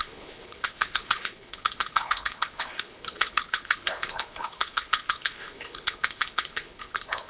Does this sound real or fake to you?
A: fake